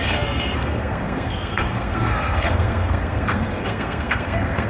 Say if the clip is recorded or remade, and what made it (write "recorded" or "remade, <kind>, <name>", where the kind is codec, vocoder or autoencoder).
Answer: remade, codec, SNAC